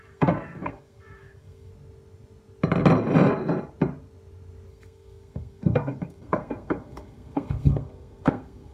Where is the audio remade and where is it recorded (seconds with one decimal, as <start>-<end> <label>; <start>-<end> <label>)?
0.0-1.7 remade; 1.7-4.7 recorded; 4.7-8.7 remade